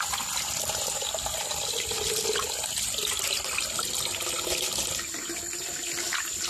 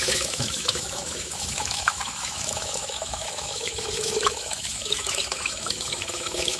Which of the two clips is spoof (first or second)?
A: second